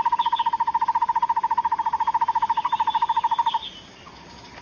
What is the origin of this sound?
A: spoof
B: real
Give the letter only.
B